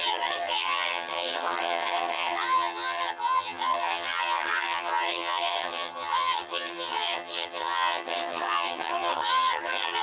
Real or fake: fake